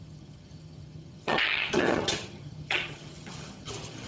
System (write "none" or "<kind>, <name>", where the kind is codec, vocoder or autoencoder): vocoder, HiFi-GAN